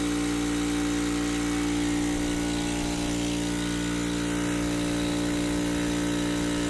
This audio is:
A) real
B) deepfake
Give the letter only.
A